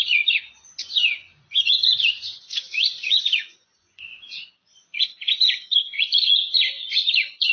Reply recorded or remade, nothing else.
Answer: remade